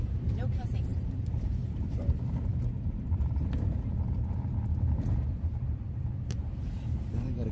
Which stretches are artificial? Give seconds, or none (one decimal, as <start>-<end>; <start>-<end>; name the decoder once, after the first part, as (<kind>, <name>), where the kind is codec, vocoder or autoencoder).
0.0-7.5 (vocoder, BigVGAN v2)